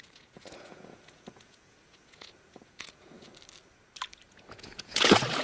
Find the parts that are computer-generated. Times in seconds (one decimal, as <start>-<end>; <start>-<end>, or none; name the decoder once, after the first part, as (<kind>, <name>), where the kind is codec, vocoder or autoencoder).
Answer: 0.0-3.3 (vocoder, Vocos); 4.3-5.4